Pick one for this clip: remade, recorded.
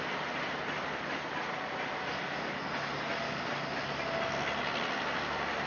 recorded